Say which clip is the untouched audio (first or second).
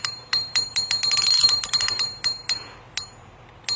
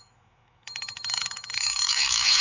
first